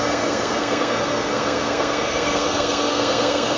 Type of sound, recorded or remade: remade